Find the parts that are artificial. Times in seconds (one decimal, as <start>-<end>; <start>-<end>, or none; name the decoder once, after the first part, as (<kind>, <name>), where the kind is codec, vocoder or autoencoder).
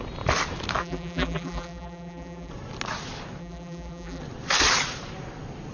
0.8-2.5 (vocoder, BigVGAN v2); 3.4-4.2